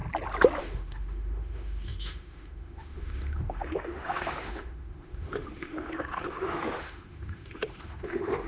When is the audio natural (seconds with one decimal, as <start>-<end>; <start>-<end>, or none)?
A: 0.0-0.6